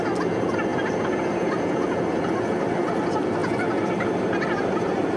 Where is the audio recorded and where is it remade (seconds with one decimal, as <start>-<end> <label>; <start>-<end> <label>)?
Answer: 0.0-3.4 recorded; 3.4-5.2 remade